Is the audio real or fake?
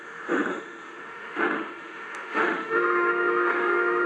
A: fake